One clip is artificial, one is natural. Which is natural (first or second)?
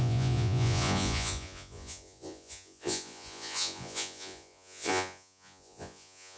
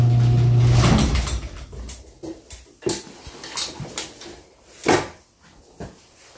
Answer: second